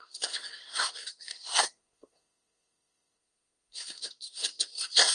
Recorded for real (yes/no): no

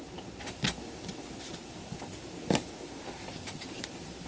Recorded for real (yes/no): yes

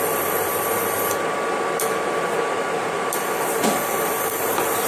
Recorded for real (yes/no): no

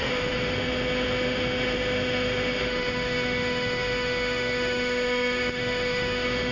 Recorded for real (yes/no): no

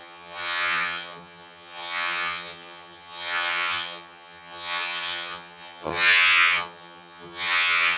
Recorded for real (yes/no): no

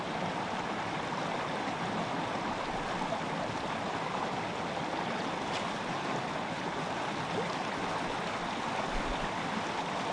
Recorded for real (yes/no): yes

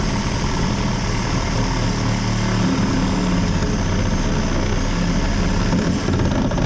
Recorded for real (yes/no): yes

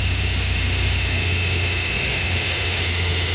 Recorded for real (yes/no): no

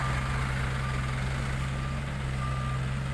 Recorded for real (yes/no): yes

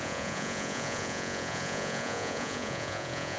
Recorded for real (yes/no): no